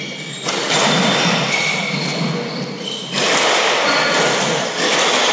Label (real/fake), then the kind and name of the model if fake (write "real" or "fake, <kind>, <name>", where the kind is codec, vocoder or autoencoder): real